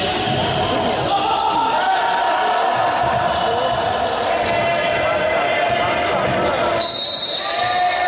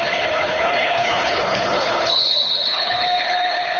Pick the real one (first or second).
first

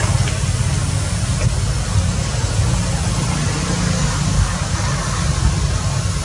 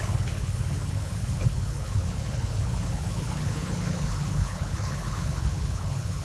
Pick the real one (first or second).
first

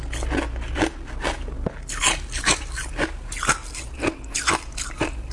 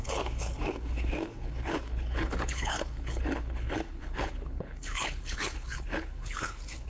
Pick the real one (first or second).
first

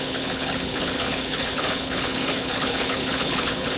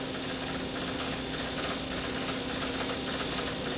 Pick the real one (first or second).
second